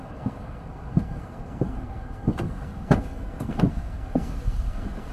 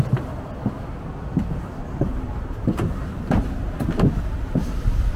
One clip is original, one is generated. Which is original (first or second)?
second